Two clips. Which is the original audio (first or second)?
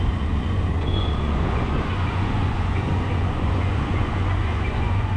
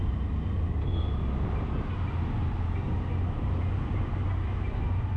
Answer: second